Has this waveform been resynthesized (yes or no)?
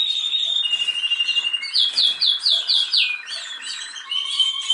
no